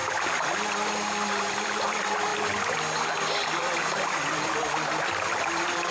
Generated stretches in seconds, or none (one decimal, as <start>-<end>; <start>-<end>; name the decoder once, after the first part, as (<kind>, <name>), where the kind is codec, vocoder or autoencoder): none

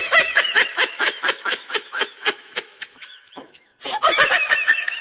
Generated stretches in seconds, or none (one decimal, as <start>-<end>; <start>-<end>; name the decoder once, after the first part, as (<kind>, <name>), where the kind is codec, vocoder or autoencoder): 0.0-3.7 (autoencoder, DAC-VAE); 4.3-5.0

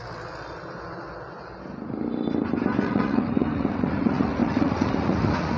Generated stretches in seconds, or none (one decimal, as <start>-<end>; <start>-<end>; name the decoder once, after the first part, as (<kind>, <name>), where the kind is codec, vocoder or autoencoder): 2.8-5.6 (vocoder, Vocos)

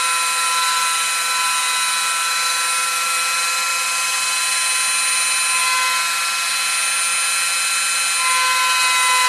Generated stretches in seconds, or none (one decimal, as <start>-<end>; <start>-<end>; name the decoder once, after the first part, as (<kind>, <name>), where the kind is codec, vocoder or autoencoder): none